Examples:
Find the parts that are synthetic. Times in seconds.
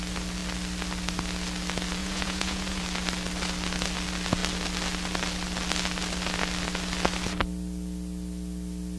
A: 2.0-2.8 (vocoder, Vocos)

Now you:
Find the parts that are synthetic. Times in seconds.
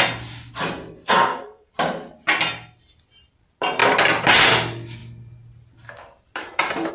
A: 1.1-1.7 (codec, SNAC)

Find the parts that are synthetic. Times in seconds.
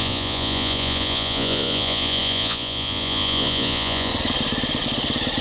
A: 0.0-4.1 (vocoder, Vocos)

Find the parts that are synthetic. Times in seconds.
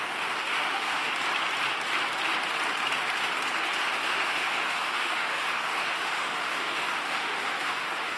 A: 0.0-1.1 (autoencoder, DAC-VAE); 3.9-8.2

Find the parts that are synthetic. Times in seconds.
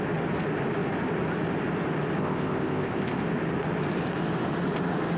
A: 2.2-3.2 (codec, ZipCodec)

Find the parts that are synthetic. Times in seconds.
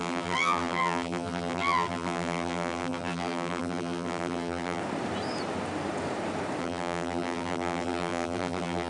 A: 0.0-4.8 (vocoder, BigVGAN v2); 6.6-8.9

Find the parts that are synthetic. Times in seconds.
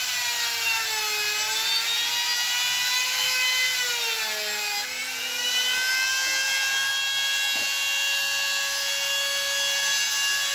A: none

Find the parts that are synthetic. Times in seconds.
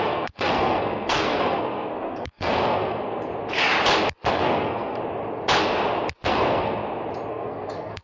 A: 0.0-3.3 (codec, SNAC); 4.3-5.0; 6.3-6.8; 7.3-8.0